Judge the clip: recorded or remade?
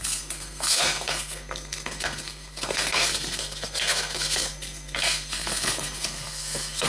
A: remade